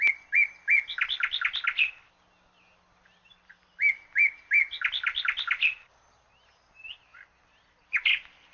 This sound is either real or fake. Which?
real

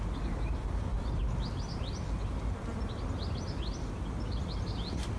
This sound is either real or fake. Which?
real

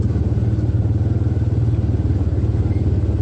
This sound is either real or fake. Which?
real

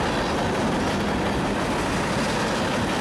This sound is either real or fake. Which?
real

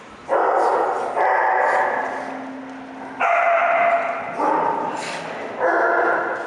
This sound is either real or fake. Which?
real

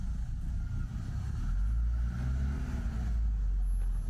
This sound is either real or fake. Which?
real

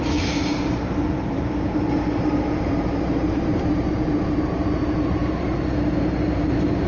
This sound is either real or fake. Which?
fake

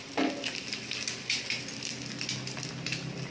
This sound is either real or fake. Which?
fake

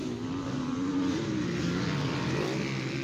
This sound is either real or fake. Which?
real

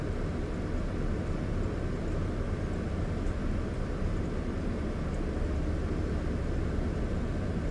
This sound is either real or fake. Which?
real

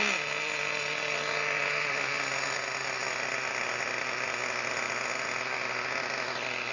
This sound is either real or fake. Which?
real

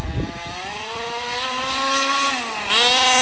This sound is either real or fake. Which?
real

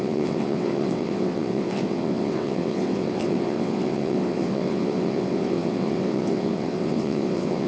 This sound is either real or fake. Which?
fake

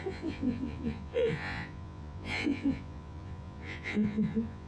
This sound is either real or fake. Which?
fake